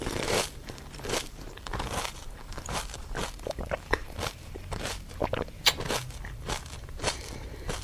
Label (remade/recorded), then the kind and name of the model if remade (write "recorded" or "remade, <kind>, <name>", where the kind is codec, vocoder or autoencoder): remade, vocoder, BigVGAN v2